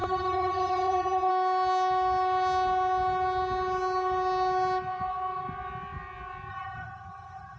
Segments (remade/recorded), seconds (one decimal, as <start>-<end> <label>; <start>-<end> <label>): 0.0-1.3 remade; 1.3-6.5 recorded; 6.5-7.6 remade